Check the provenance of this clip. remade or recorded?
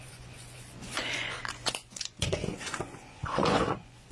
remade